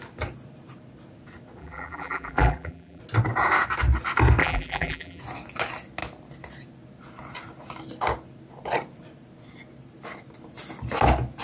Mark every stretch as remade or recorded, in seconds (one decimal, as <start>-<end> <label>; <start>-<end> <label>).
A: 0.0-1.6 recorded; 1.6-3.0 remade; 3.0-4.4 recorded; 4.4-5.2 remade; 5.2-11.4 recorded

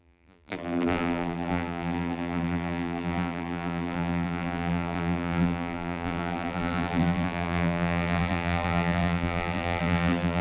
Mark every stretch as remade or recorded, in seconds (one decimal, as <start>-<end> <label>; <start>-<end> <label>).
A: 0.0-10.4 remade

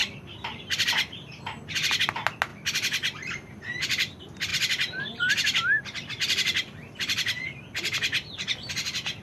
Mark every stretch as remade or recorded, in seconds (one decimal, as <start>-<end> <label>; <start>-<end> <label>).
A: 0.0-2.0 remade; 2.0-2.5 recorded; 2.5-3.8 remade; 3.8-4.5 recorded; 4.5-8.7 remade; 8.7-9.2 recorded

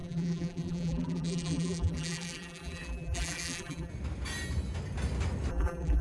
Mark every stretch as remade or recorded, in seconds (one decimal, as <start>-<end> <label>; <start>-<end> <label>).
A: 0.0-3.9 remade; 3.9-5.5 recorded; 5.5-6.0 remade

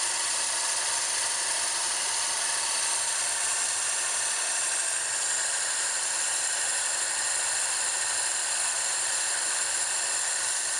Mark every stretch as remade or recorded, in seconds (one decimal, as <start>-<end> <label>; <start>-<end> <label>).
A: 0.0-8.3 recorded; 8.3-9.6 remade; 9.6-10.8 recorded

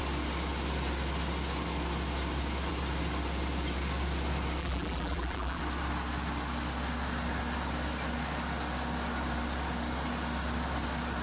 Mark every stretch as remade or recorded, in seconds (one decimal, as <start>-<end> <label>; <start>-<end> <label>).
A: 0.0-4.6 recorded; 4.6-5.6 remade; 5.6-11.2 recorded